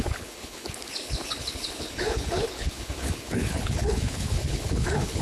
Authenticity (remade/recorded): remade